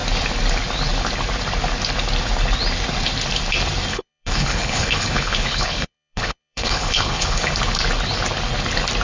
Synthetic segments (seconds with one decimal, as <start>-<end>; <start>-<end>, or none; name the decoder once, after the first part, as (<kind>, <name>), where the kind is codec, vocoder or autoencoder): 3.9-7.5 (codec, HILCodec)